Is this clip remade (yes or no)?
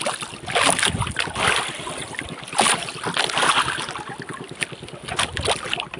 no